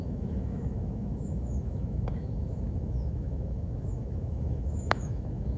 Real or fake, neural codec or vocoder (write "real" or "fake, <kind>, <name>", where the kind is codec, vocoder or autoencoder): fake, autoencoder, DAC-VAE